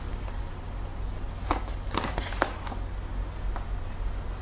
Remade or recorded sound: recorded